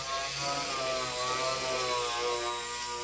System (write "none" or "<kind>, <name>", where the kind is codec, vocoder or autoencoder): none